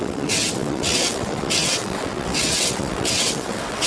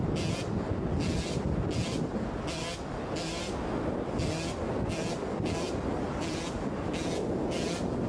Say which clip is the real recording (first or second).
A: second